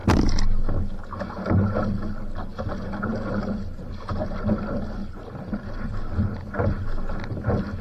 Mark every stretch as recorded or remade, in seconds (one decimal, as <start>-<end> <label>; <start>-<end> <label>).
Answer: 0.0-3.1 recorded; 3.1-6.4 remade; 6.4-7.8 recorded